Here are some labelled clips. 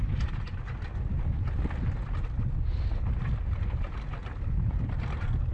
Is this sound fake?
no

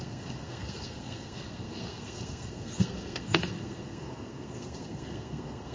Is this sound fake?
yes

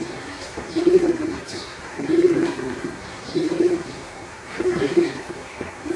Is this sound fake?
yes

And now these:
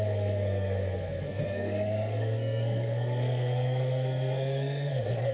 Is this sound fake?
yes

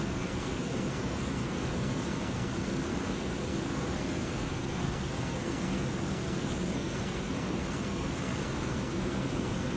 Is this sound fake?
yes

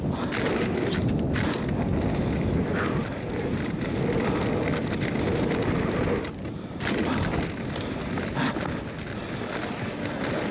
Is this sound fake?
no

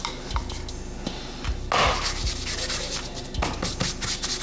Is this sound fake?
no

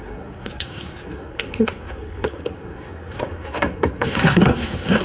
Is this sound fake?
yes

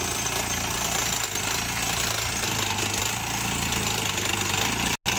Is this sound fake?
no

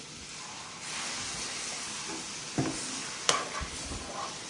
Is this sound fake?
no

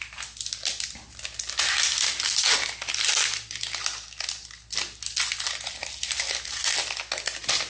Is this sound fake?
no